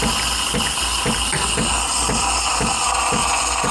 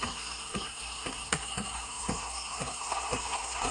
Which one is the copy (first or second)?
second